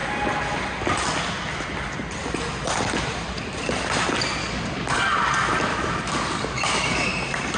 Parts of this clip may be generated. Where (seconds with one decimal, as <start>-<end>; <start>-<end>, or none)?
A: 4.4-5.0; 5.7-7.1